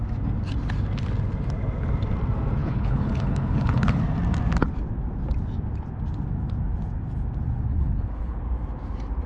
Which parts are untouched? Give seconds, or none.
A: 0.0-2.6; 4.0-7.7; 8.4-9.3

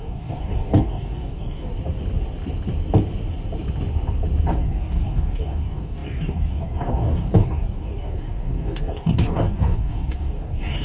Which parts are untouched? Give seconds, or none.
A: 1.7-4.6

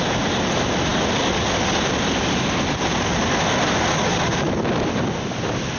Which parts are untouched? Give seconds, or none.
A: 0.0-5.8

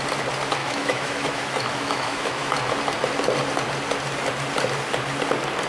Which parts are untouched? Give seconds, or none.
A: 0.0-0.6; 2.5-5.7

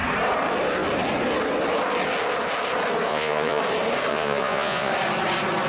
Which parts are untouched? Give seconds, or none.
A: 0.0-3.1; 3.6-4.1; 4.9-5.7

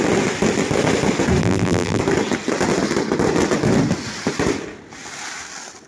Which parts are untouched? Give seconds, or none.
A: 0.0-1.4; 2.0-5.9

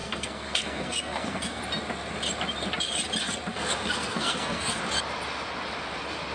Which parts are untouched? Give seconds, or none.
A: 1.6-3.5; 4.8-6.3